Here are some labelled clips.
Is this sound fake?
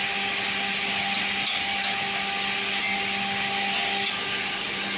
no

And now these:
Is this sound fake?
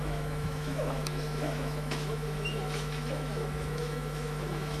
yes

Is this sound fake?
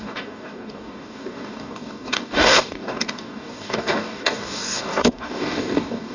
yes